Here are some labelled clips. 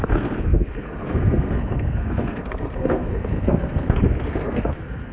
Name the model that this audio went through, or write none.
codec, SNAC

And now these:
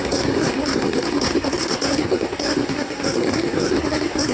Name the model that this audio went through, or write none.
codec, SNAC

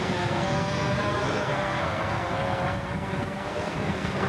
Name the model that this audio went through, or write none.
codec, SNAC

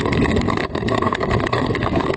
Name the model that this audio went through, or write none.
codec, SNAC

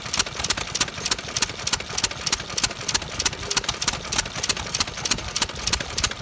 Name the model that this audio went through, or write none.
none